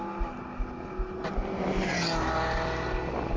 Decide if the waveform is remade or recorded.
recorded